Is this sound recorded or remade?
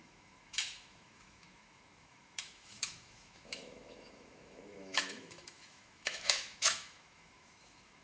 remade